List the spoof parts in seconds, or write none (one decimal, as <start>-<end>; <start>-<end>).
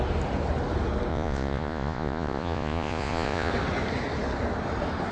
1.1-3.5